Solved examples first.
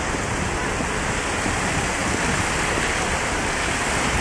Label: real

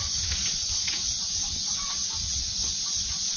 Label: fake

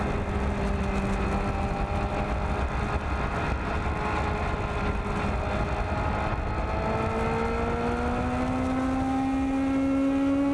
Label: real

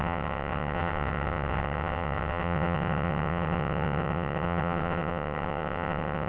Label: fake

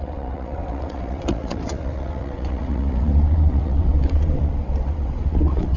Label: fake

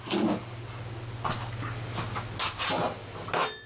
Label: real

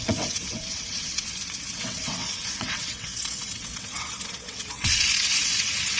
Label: fake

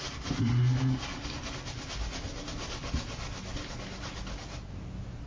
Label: real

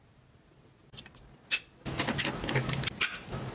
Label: real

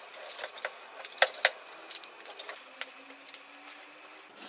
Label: real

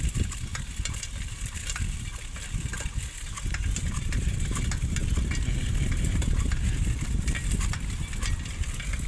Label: real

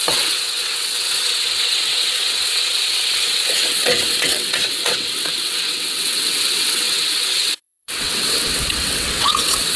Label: fake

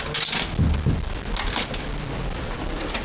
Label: real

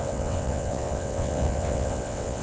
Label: fake